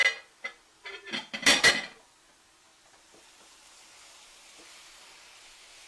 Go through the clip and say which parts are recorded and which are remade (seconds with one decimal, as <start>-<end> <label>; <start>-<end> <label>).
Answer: 0.0-5.9 recorded